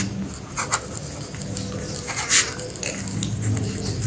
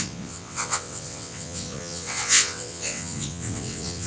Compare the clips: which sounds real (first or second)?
first